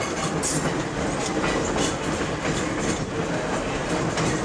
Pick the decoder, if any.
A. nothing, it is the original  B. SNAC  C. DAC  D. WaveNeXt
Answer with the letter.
A